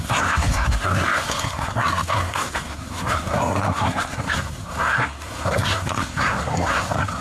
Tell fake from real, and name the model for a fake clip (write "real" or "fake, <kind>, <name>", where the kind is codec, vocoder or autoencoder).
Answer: fake, codec, SNAC